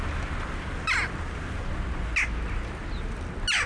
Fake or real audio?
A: real